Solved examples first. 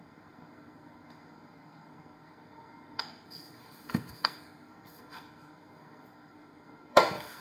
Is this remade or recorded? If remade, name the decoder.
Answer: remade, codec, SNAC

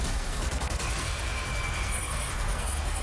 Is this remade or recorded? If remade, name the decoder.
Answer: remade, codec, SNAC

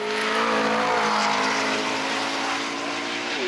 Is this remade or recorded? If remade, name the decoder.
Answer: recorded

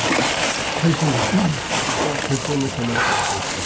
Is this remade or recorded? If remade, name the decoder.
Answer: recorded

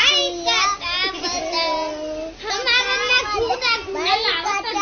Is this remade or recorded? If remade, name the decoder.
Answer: recorded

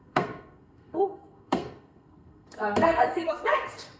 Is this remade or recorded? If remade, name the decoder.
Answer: remade, codec, SNAC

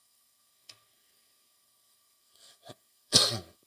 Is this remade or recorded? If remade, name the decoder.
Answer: remade, codec, SNAC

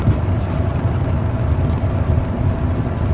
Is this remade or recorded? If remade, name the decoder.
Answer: recorded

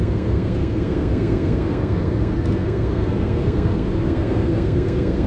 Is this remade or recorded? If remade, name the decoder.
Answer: remade, codec, SNAC